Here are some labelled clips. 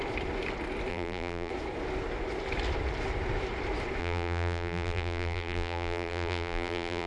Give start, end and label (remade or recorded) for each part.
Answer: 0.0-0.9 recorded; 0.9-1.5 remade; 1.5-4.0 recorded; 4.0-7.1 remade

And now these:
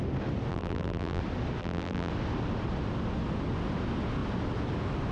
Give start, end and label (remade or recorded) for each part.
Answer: 0.0-0.5 recorded; 0.5-1.2 remade; 1.2-1.6 recorded; 1.6-2.1 remade; 2.1-5.1 recorded

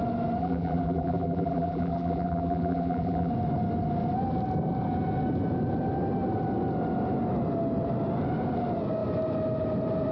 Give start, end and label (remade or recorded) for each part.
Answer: 0.0-0.4 recorded; 0.4-3.3 remade; 3.3-10.1 recorded

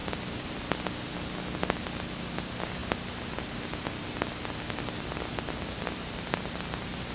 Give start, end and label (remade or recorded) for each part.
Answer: 0.0-0.8 remade; 0.8-7.1 recorded

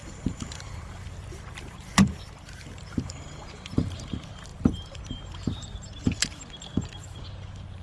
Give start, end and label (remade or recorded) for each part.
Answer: 0.0-7.8 remade